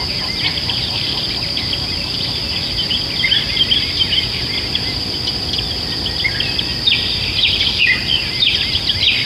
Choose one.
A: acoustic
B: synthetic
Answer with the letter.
A